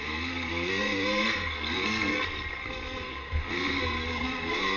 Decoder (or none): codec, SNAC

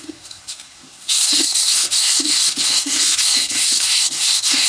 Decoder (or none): codec, SNAC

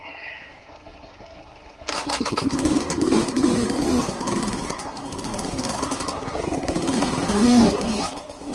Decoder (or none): codec, SNAC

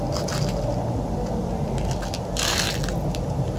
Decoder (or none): none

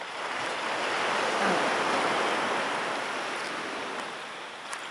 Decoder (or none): none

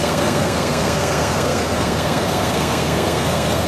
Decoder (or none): codec, SNAC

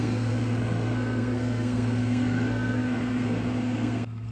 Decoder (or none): codec, SNAC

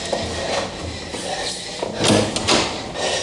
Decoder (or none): none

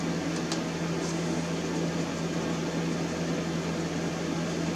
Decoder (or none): none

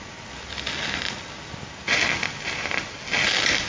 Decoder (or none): none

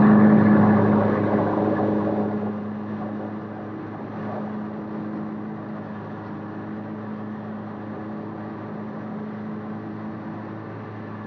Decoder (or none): none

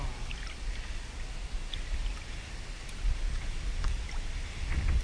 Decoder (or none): none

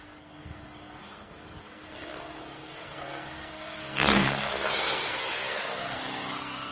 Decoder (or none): codec, SNAC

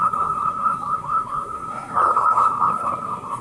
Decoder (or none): codec, SNAC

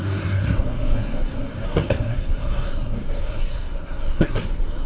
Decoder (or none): codec, SNAC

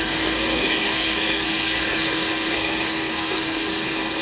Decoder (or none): codec, SNAC